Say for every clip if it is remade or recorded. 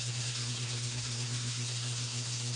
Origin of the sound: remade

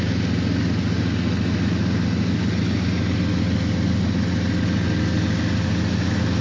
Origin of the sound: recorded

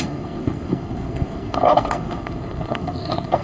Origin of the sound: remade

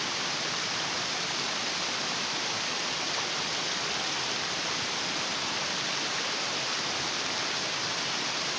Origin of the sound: recorded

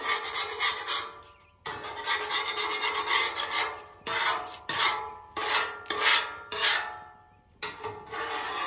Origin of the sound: recorded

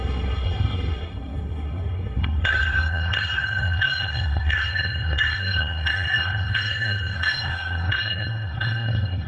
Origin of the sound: remade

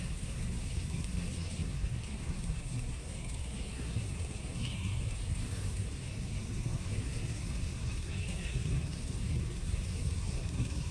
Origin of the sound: remade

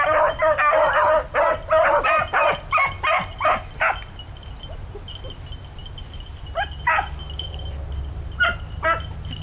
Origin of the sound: recorded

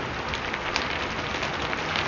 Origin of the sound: recorded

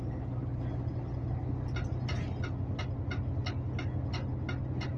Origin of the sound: recorded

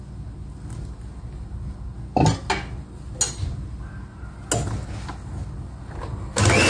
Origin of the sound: recorded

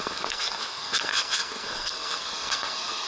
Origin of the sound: remade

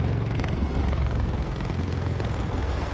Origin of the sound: remade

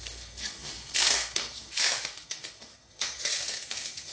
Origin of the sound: remade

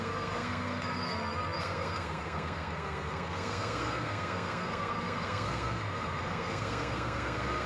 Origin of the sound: remade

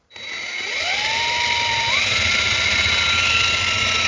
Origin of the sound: recorded